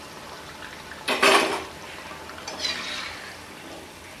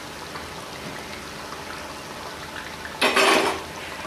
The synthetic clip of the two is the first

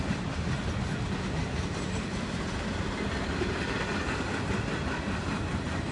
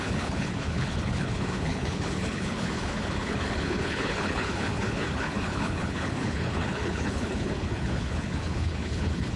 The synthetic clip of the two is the second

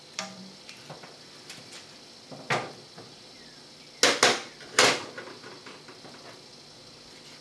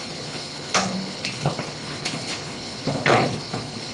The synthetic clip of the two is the second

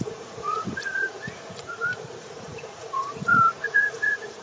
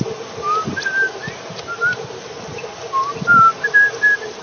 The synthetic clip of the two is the first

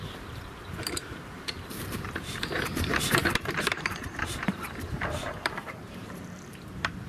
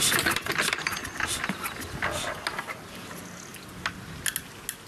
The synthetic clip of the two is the first